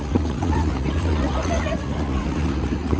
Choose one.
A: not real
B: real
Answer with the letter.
A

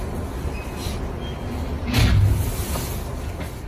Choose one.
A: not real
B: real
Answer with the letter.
B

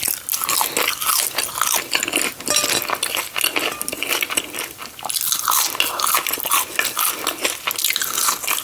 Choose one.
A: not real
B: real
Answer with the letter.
B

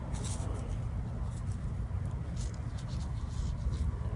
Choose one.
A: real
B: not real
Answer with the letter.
A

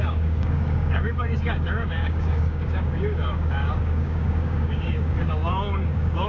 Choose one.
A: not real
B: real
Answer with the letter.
A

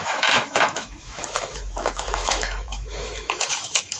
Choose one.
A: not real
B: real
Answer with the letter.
A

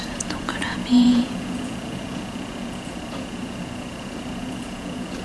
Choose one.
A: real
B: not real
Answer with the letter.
B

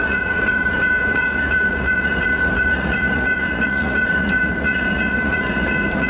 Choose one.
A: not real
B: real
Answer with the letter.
A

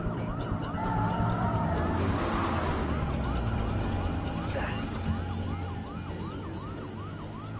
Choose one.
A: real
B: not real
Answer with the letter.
A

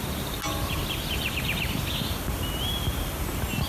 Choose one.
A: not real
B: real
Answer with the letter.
B